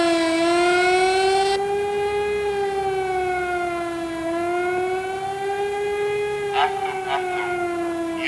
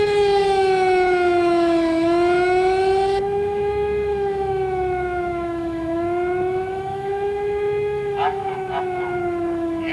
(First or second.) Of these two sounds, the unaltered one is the first